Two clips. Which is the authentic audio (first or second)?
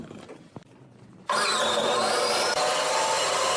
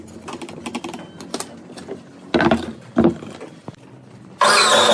second